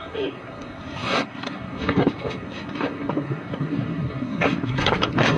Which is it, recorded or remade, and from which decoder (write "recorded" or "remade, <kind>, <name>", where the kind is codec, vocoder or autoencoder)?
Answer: remade, codec, SNAC